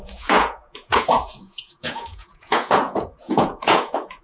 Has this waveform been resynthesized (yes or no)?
yes